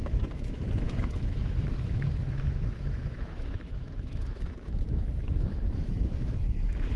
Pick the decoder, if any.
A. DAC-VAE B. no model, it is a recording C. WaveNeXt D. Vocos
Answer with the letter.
A